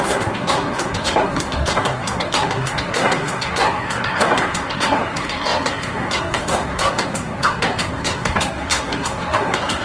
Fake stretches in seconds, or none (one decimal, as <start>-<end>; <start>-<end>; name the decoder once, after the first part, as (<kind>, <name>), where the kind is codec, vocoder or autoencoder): 0.0-9.8 (codec, SNAC)